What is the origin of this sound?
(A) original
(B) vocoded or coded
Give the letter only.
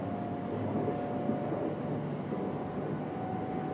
A